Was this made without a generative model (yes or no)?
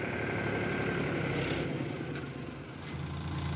yes